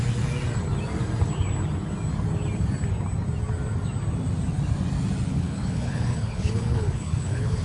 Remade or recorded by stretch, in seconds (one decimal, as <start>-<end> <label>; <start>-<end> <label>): 0.0-5.3 recorded; 5.3-7.6 remade